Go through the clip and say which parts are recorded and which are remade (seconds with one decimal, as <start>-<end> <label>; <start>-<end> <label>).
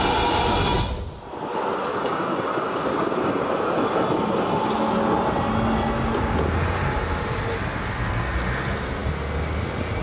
0.0-1.9 recorded; 1.9-3.5 remade; 3.5-10.0 recorded